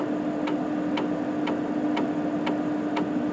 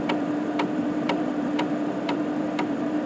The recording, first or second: first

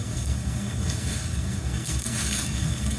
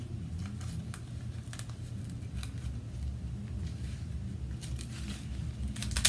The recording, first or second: second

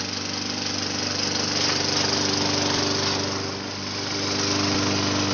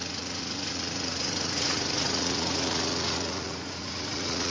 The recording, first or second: first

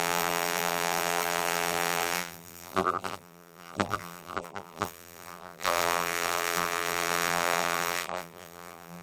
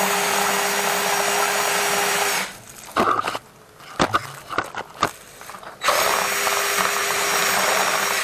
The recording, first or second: second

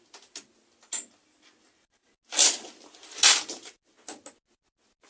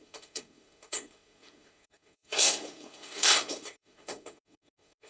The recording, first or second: first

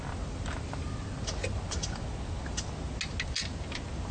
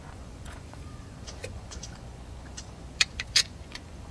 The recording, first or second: first